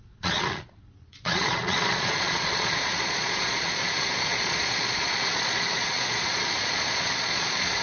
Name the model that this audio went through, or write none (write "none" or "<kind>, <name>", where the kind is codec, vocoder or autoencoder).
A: vocoder, Vocos